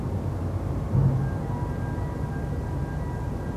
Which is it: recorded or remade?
recorded